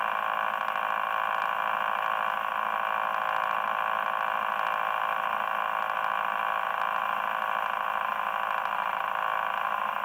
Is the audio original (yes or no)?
yes